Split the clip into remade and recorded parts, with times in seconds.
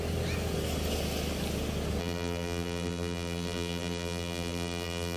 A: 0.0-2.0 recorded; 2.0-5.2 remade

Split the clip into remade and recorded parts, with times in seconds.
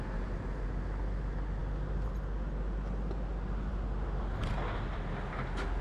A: 0.0-5.8 recorded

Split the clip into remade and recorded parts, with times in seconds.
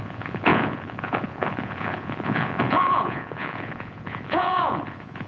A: 0.0-5.3 remade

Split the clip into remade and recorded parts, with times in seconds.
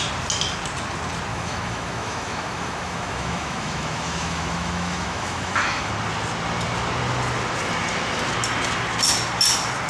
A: 0.0-1.3 recorded; 1.3-5.9 remade; 5.9-9.9 recorded